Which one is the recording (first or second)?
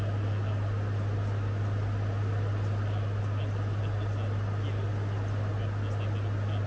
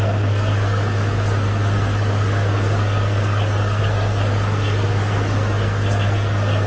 first